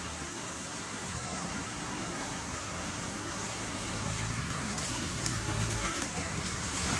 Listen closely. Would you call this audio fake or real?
fake